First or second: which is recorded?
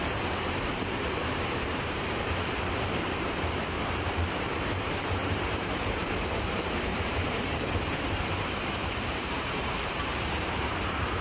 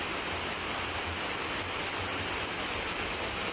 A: second